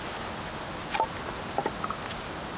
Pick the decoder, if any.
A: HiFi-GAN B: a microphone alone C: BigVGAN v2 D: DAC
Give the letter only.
B